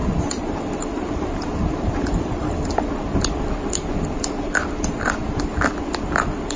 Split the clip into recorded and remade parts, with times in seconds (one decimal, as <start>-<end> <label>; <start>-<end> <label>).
0.0-2.8 remade; 2.8-6.6 recorded